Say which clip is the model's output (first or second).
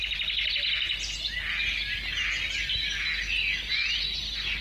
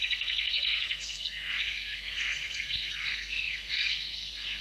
second